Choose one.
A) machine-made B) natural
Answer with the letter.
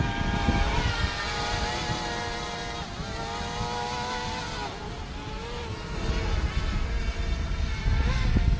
B